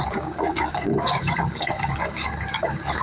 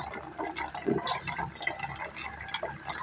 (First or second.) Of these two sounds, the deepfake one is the first